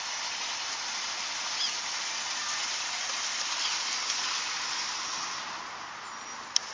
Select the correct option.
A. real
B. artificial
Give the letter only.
A